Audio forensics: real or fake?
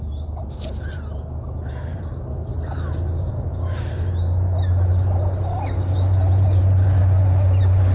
real